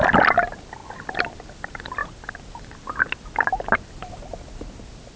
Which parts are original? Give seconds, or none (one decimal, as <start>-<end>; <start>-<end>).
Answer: 0.0-5.2